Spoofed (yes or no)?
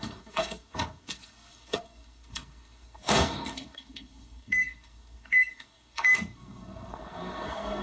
yes